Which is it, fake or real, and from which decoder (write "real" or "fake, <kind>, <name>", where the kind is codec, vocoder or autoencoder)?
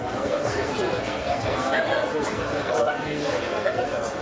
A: fake, codec, SNAC